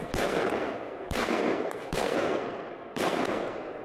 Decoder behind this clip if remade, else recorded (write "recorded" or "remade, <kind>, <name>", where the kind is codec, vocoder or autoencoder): remade, codec, SNAC